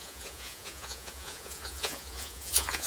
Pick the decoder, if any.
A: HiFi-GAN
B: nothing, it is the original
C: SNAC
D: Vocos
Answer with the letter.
D